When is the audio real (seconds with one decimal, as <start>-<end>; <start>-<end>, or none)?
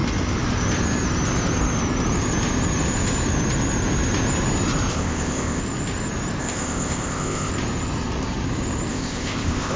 0.0-4.9; 5.6-6.4; 7.5-8.9